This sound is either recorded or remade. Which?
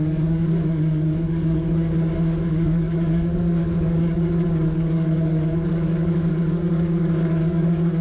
remade